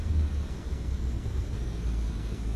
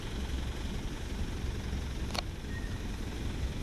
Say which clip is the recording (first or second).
second